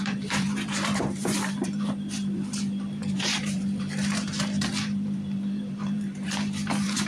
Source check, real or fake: fake